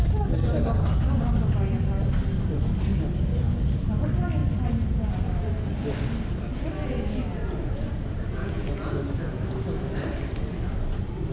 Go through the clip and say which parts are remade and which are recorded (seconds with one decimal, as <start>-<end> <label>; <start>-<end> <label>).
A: 0.0-7.3 recorded; 7.3-9.0 remade; 9.0-11.3 recorded